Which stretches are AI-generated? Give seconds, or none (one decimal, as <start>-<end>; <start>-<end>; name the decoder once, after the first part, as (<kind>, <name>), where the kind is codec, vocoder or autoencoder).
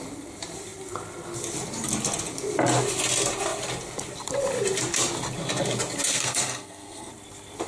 6.1-7.1 (codec, SNAC)